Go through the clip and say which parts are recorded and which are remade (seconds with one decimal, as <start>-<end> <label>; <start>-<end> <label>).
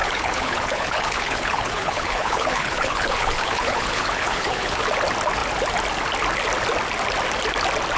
0.0-4.8 remade; 4.8-8.0 recorded